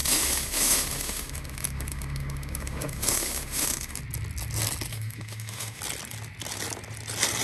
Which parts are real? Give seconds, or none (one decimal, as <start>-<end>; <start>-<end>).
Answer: 4.0-4.9; 5.8-7.4